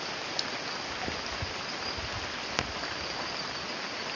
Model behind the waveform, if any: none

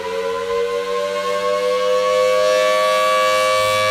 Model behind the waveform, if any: none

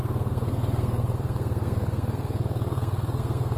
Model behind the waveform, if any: codec, SNAC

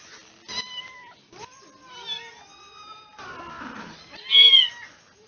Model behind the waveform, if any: none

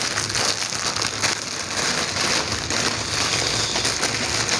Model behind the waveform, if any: none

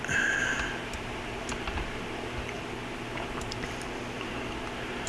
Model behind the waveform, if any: vocoder, BigVGAN v2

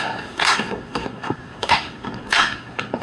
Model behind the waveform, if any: codec, SNAC